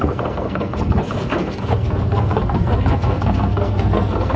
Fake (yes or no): yes